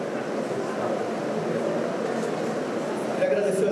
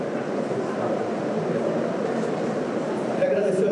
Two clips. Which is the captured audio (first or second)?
first